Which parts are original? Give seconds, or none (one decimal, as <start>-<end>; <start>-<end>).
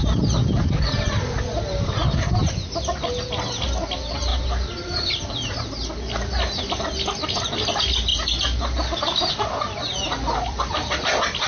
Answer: 0.0-4.3; 5.9-11.5